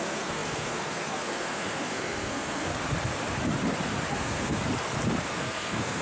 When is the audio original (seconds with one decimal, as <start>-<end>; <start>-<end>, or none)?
2.7-4.1; 4.6-5.3

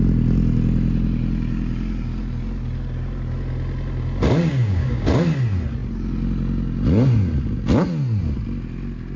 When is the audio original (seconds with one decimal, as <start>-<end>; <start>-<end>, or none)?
0.0-4.5; 5.1-9.2

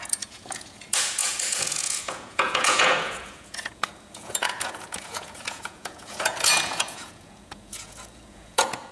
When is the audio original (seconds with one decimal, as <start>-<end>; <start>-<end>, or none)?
none